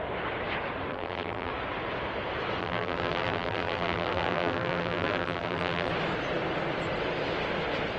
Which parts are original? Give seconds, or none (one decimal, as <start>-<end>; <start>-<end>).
0.0-0.9; 1.5-2.6; 5.9-8.0